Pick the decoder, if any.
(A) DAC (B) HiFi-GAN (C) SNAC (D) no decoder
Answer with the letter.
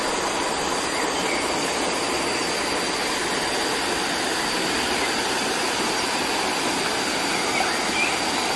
D